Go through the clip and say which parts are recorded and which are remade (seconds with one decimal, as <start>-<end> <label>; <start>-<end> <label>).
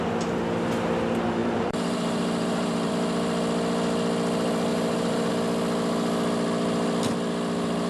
0.0-1.4 recorded; 1.4-2.9 remade; 2.9-4.7 recorded; 4.7-5.3 remade; 5.3-7.9 recorded